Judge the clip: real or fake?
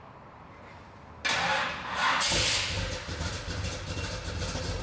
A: real